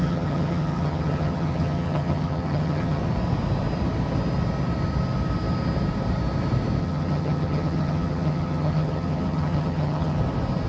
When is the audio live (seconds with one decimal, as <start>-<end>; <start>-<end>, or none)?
3.0-6.8; 10.2-10.7